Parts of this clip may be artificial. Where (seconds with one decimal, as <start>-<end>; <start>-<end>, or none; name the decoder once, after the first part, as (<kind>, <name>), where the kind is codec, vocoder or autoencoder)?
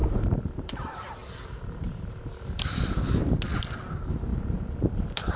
0.0-3.2 (vocoder, BigVGAN v2); 4.3-5.4